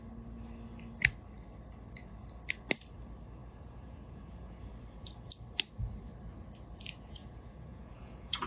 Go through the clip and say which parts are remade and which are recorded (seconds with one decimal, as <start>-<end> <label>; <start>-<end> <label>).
0.0-3.4 recorded; 3.4-4.7 remade; 4.7-7.2 recorded; 7.2-8.5 remade